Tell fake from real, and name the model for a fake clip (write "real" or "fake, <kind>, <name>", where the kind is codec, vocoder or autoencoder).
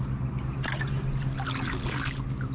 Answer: real